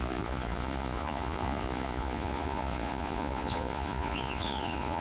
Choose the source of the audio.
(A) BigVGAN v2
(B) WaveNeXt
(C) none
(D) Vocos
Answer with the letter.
D